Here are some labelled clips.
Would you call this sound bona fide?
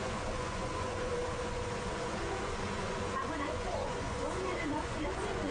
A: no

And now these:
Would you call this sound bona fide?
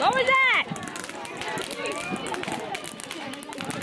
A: yes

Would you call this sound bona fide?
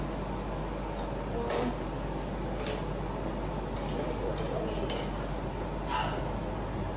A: yes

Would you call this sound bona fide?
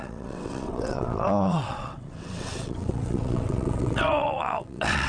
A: no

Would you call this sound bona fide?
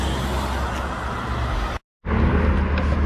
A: yes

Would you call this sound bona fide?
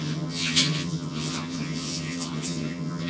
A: no